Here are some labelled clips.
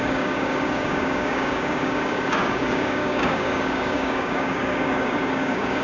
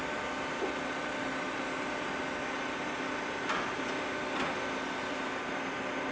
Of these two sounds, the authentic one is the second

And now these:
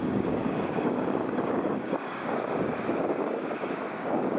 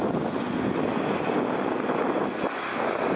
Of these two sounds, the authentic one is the second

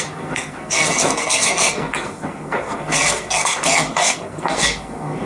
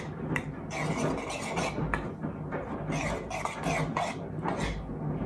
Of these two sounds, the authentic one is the second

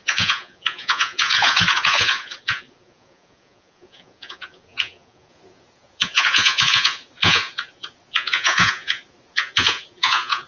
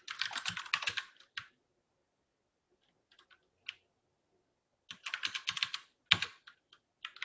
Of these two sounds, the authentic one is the second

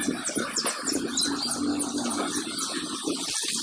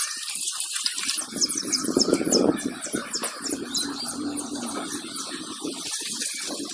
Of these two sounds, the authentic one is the first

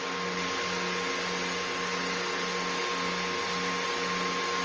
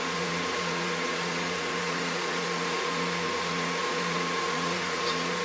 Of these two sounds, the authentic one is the first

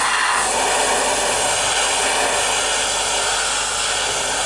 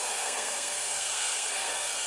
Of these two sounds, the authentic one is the first